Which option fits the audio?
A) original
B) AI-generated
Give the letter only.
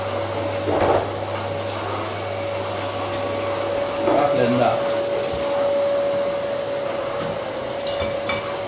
A